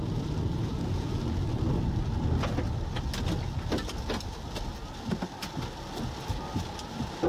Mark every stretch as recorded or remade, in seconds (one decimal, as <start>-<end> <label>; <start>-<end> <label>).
0.0-0.6 recorded; 0.6-1.1 remade; 1.1-7.3 recorded